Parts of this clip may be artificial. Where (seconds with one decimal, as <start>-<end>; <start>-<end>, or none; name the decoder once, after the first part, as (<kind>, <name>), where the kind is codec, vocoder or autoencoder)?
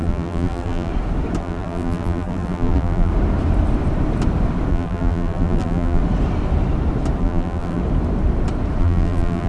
0.0-0.9 (vocoder, BigVGAN v2); 1.4-3.1; 4.7-6.0; 7.2-7.8; 8.8-9.5